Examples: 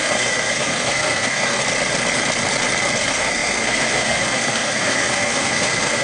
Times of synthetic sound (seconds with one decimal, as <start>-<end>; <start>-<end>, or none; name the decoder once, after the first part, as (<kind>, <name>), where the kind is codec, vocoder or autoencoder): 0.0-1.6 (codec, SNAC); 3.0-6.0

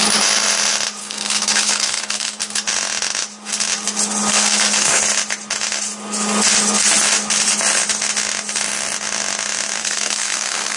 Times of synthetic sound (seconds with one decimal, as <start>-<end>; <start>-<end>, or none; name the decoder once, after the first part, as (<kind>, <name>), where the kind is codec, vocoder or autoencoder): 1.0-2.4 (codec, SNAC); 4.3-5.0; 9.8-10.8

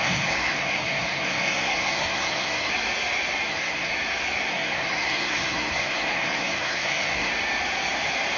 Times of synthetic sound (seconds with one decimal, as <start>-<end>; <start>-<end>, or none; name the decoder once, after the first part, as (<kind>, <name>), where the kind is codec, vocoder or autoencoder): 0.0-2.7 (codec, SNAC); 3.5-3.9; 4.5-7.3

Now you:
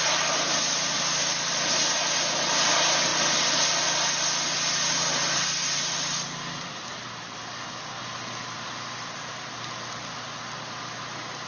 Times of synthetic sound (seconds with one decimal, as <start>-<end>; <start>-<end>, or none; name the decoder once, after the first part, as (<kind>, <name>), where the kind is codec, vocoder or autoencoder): none